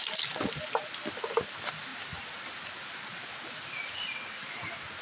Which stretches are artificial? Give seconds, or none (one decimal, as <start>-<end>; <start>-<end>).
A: none